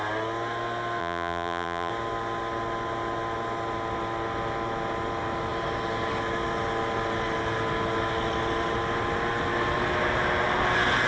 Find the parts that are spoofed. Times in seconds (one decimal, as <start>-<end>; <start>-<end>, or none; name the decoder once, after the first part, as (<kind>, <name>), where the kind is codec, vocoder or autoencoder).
1.0-1.9 (vocoder, BigVGAN v2)